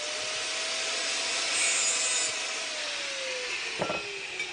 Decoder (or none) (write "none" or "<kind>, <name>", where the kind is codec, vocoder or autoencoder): none